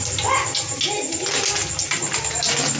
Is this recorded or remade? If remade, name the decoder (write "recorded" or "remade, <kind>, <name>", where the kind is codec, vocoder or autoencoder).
recorded